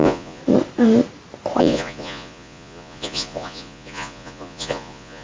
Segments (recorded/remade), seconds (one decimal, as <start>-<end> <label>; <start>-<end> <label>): 0.0-0.4 remade; 0.4-1.6 recorded; 1.6-5.2 remade